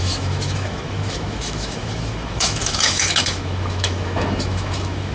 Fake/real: fake